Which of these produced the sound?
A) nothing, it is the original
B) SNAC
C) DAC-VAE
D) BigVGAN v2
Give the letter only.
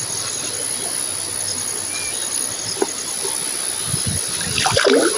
A